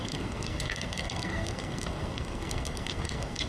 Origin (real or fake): fake